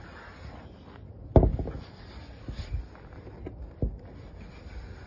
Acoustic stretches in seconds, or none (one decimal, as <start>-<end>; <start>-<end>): 0.0-5.1